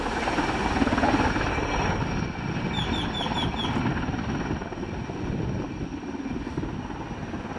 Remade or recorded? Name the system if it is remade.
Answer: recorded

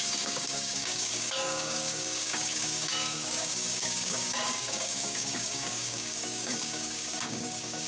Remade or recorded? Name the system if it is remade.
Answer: remade, codec, DAC